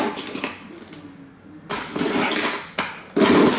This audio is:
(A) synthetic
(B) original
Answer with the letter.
B